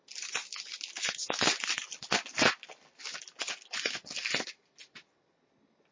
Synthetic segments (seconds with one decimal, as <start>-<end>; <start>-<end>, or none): none